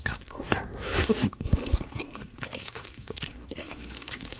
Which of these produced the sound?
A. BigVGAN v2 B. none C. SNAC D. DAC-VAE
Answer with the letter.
C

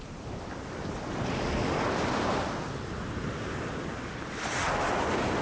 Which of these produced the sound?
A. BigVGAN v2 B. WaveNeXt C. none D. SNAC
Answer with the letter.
C